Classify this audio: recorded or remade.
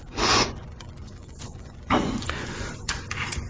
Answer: remade